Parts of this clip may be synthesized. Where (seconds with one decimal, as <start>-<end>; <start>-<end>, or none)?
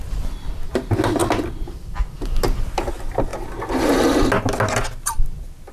none